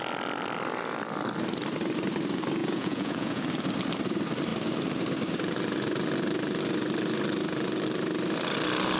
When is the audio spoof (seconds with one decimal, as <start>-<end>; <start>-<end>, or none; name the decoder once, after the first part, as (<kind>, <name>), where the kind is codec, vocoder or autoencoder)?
2.6-3.4 (vocoder, Vocos)